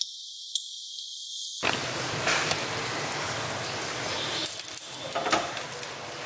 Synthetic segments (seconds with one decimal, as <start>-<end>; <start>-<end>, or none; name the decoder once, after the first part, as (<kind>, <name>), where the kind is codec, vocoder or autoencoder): none

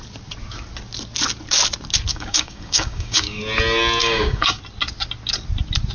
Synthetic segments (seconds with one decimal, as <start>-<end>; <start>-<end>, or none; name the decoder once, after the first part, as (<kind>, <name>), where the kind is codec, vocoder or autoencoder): 2.1-3.4 (codec, DAC); 4.0-4.6